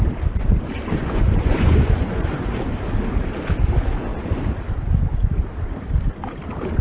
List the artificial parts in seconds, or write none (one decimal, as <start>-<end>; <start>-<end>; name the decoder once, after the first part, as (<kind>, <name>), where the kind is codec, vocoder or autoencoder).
1.0-2.5 (vocoder, Vocos)

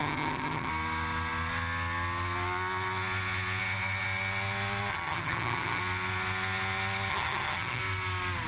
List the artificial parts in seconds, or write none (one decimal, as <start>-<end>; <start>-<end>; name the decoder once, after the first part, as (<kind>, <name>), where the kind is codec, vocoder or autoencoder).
0.0-0.7 (vocoder, HiFi-GAN); 4.9-5.8; 7.1-7.8

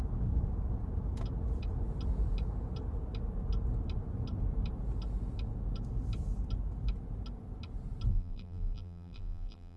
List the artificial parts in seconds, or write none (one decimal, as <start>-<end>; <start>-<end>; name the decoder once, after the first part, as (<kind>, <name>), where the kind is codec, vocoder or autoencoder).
8.1-9.8 (vocoder, BigVGAN v2)